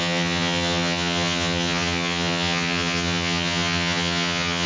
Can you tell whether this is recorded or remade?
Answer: remade